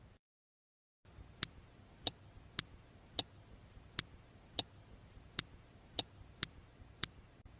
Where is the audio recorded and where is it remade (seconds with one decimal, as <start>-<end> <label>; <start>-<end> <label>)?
0.0-6.7 recorded; 6.7-7.6 remade